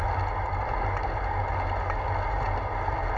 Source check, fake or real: real